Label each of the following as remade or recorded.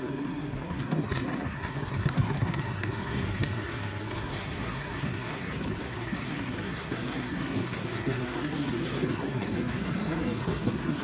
remade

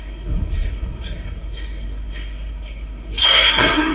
remade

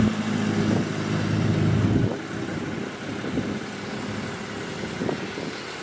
recorded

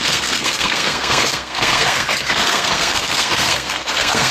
remade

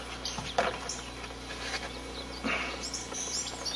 recorded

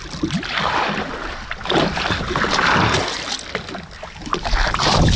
recorded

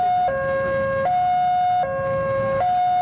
recorded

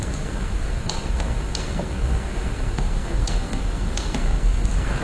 remade